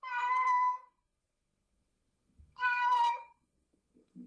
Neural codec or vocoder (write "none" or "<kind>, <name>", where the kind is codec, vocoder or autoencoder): codec, SNAC